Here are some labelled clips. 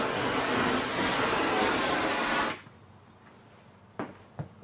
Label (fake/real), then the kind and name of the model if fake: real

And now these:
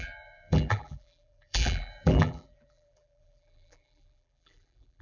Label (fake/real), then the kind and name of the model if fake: fake, vocoder, BigVGAN v2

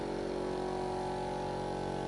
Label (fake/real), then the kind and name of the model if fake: real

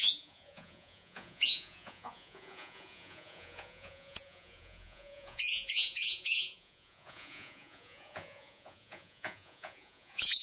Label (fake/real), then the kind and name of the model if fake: fake, vocoder, Vocos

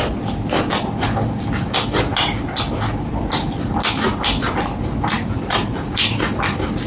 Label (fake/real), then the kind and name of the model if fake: real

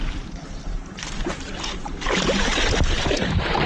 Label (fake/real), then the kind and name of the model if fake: fake, vocoder, BigVGAN v2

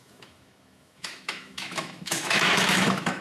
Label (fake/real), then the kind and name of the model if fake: fake, autoencoder, DAC-VAE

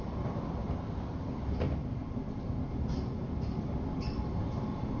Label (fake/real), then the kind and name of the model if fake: real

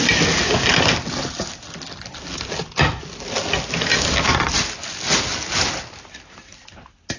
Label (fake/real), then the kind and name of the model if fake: real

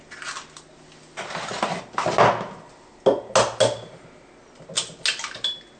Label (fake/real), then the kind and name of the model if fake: real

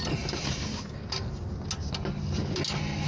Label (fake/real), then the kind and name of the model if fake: real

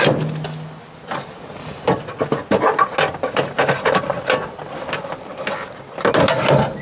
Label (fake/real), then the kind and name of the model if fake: real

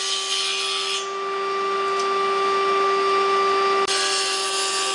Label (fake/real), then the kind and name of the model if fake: real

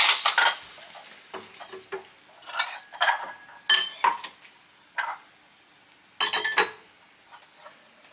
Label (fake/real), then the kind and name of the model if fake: real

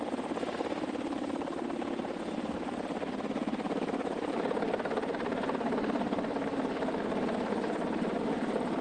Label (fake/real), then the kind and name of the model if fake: real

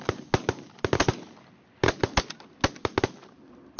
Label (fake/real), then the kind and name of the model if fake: real